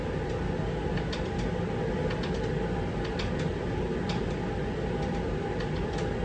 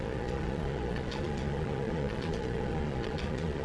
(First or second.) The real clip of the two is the first